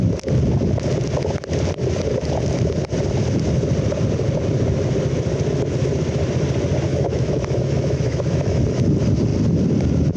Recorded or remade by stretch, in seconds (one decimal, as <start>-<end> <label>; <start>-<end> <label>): 0.0-6.9 recorded; 6.9-8.6 remade; 8.6-10.2 recorded